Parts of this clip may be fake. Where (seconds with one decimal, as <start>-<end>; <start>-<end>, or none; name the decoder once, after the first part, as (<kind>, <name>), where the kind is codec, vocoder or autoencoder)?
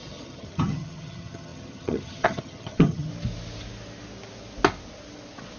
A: 0.0-3.1 (vocoder, HiFi-GAN)